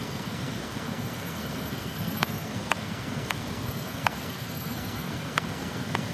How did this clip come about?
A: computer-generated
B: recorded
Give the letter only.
A